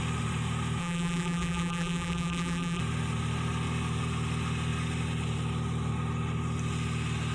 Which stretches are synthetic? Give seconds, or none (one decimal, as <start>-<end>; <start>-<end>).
0.8-2.8